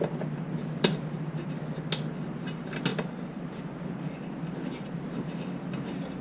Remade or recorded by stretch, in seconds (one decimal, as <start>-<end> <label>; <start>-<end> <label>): 0.0-6.2 recorded